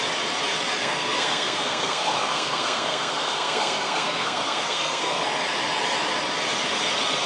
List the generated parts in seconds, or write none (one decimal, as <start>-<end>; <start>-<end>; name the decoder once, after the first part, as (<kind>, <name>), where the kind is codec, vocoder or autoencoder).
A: 0.8-5.2 (codec, SNAC)

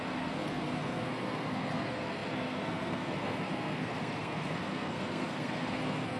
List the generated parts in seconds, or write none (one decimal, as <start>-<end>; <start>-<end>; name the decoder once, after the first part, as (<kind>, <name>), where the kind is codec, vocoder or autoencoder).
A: 0.0-6.2 (codec, SNAC)

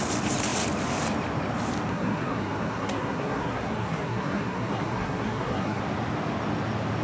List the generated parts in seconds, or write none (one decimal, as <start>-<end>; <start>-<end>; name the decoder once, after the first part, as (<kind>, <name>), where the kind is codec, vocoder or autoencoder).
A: 1.9-5.8 (codec, SNAC)

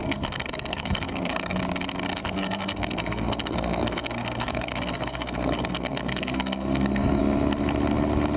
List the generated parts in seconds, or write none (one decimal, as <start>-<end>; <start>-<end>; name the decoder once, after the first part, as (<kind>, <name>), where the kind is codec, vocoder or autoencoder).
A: 0.0-1.6 (codec, SNAC); 2.2-7.2